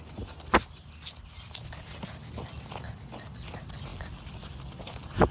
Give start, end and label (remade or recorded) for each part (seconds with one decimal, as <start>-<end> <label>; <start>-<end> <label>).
0.0-5.3 recorded